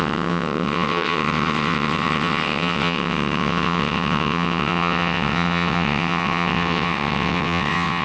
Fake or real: fake